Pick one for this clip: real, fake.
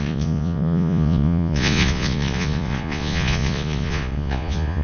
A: fake